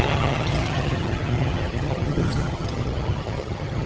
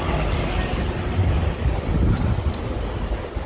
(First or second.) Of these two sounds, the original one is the second